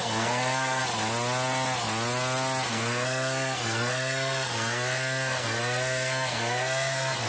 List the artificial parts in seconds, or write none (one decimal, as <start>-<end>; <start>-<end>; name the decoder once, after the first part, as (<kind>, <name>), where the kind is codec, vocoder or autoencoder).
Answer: 0.0-0.8 (codec, SNAC); 2.7-7.3